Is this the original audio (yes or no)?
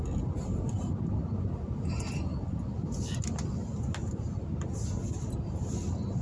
yes